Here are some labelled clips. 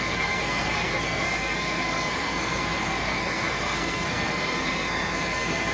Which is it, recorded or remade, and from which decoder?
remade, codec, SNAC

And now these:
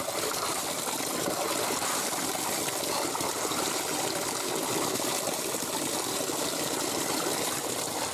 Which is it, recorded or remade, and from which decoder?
recorded